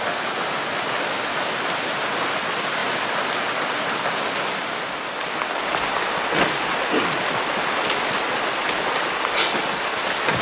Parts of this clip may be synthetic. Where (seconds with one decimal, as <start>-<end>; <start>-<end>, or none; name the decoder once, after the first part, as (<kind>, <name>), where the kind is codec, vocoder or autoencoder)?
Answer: none